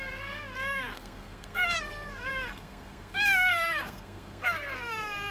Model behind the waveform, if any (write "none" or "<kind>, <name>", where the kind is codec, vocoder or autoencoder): codec, SNAC